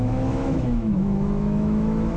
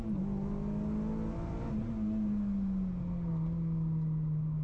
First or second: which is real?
second